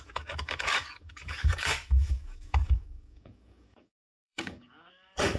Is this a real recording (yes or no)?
no